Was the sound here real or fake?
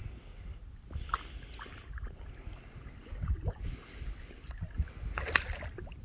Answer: real